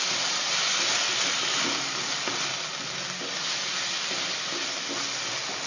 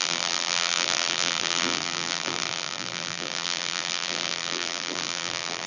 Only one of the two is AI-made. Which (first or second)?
second